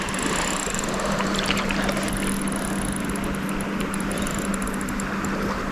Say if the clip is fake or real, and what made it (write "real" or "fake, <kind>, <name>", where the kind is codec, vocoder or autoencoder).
real